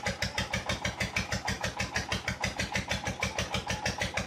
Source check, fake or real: real